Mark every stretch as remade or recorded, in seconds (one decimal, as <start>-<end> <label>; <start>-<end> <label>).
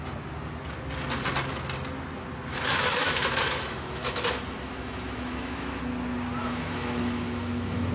0.0-2.5 recorded; 2.5-5.8 remade; 5.8-6.4 recorded; 6.4-7.9 remade